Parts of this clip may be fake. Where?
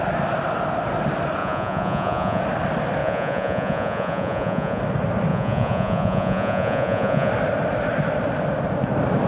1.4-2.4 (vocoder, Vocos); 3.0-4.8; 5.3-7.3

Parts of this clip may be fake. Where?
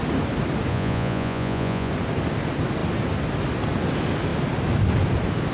0.7-1.9 (vocoder, Vocos)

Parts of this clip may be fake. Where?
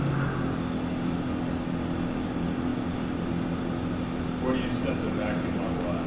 none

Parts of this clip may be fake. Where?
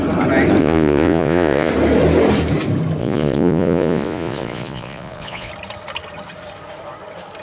0.6-1.7 (vocoder, Vocos); 3.0-5.5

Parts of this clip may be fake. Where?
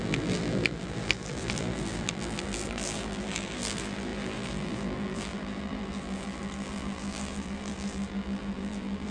0.0-9.1 (vocoder, BigVGAN v2)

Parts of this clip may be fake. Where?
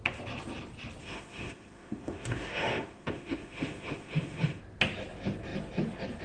1.0-4.6 (autoencoder, DAC-VAE)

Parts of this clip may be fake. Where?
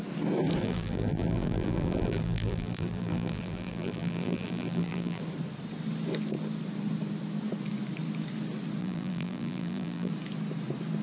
0.6-5.2 (vocoder, BigVGAN v2); 8.8-10.1